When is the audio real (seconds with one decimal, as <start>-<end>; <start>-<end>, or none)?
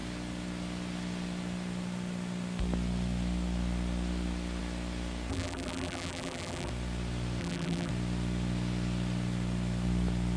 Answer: 0.0-5.3; 6.7-7.4; 7.9-10.4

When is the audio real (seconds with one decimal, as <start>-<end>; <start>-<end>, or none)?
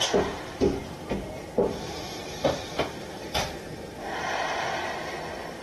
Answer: none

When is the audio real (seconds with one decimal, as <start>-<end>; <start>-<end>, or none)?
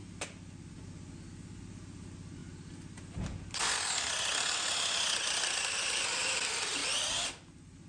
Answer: 0.0-7.9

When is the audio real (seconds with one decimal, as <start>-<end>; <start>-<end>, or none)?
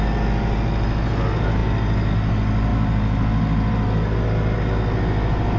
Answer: 0.0-5.6